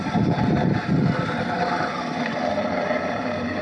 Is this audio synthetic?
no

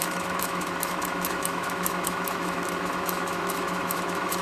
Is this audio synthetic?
yes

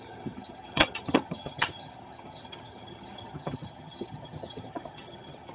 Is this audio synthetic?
yes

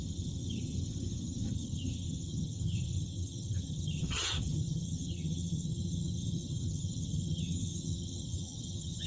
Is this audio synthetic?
yes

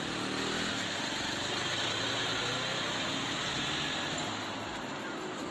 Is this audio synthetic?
no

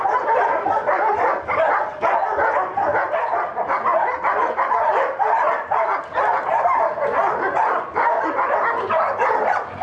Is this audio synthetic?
no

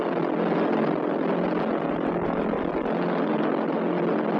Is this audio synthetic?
no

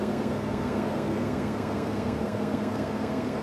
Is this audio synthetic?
yes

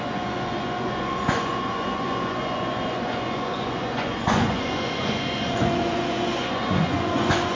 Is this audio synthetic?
yes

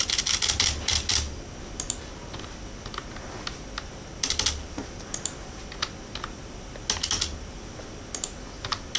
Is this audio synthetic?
no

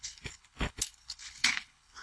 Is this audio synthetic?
yes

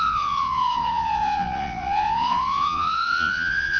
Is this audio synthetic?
yes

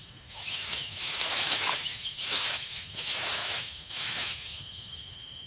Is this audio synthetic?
yes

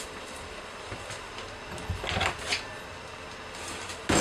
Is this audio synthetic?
no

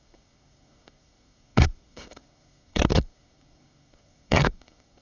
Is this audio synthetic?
yes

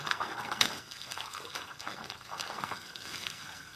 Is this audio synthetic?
yes